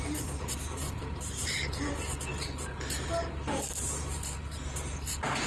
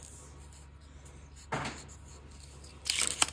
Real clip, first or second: second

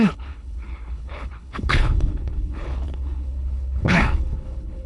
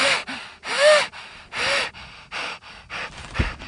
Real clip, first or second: second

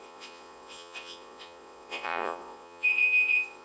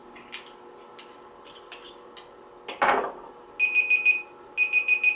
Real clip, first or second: second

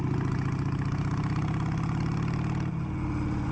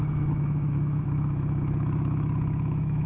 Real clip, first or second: first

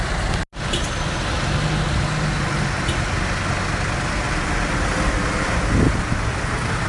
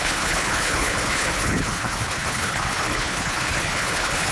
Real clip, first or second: first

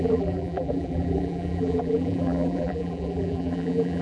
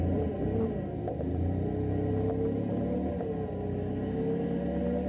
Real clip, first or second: second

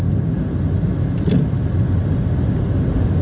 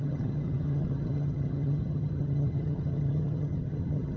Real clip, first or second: first